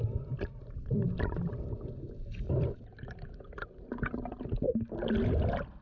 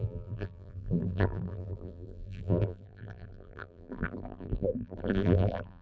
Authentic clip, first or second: first